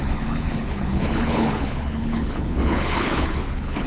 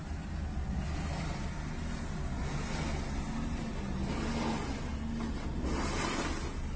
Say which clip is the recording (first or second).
second